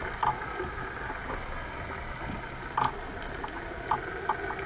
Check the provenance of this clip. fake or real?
real